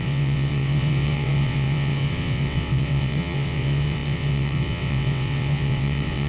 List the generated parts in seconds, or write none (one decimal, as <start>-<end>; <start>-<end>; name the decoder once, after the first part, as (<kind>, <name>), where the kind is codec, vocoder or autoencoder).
0.0-6.3 (vocoder, WaveNeXt)